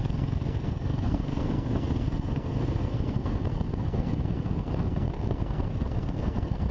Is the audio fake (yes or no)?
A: yes